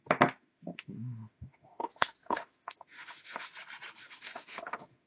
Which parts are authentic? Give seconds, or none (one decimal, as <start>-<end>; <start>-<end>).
0.0-0.4; 3.5-4.0